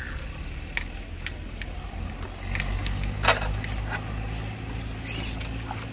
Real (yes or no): yes